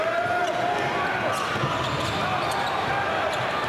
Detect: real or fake real